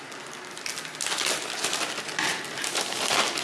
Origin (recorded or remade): recorded